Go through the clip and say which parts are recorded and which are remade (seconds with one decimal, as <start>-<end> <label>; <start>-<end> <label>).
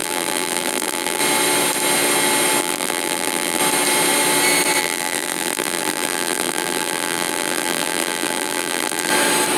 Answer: 0.0-1.2 remade; 1.2-2.6 recorded; 2.6-3.6 remade; 3.6-4.8 recorded; 4.8-9.1 remade; 9.1-9.6 recorded